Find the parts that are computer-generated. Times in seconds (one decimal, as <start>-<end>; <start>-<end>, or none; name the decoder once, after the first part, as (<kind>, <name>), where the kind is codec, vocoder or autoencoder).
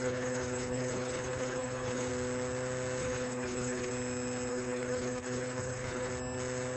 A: 0.0-2.1 (codec, HILCodec); 3.0-3.9; 4.5-6.1